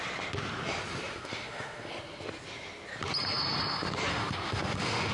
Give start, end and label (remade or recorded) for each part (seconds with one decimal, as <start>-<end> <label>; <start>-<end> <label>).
0.0-1.1 recorded; 1.1-1.9 remade; 1.9-4.1 recorded; 4.1-5.1 remade